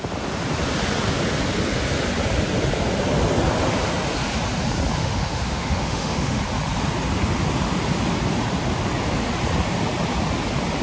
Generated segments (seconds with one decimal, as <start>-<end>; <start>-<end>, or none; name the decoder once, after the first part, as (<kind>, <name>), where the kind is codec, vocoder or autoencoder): 5.0-6.4 (autoencoder, DAC-VAE)